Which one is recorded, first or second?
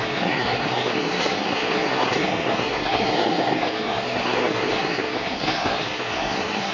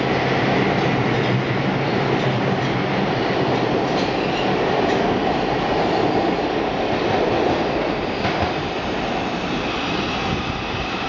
second